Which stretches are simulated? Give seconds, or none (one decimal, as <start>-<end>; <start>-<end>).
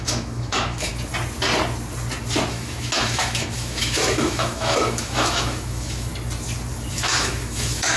0.0-0.9; 2.5-6.1; 6.9-8.0